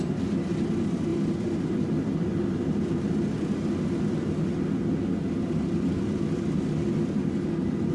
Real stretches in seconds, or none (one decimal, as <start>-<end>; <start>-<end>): 0.0-7.9